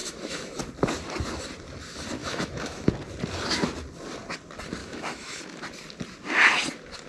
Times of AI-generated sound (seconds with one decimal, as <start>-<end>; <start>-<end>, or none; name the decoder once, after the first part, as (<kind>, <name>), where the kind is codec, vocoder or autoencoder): 0.0-0.6 (autoencoder, DAC-VAE); 2.2-2.9; 4.8-5.4